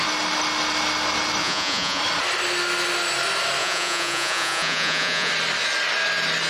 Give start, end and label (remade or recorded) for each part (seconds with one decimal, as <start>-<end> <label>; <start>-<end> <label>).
0.0-1.4 recorded; 1.4-2.0 remade; 2.0-3.6 recorded; 3.6-5.3 remade; 5.3-6.5 recorded